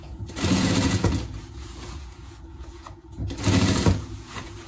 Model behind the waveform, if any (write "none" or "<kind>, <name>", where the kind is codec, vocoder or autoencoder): vocoder, Vocos